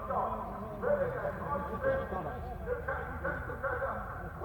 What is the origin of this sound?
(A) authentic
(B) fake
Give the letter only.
A